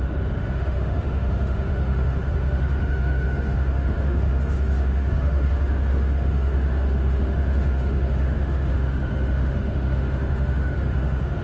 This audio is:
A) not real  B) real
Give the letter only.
A